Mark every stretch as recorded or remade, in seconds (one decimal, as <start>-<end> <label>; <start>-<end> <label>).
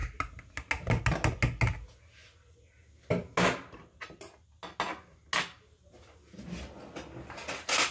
0.0-7.9 recorded